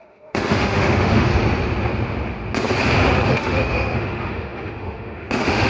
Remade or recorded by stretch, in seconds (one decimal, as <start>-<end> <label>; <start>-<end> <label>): 0.0-1.3 remade; 1.3-3.3 recorded; 3.3-5.7 remade